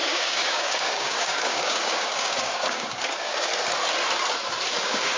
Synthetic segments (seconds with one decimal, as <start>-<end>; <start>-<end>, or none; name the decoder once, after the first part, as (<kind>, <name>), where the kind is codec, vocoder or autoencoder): 0.0-3.5 (codec, DAC); 4.7-5.2